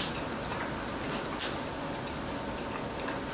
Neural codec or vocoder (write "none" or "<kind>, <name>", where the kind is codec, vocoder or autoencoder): none